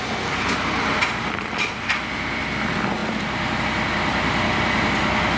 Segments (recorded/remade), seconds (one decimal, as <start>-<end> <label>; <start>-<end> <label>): 0.0-3.0 recorded; 3.0-3.6 remade; 3.6-5.4 recorded